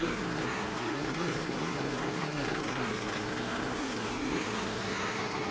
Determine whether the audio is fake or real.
fake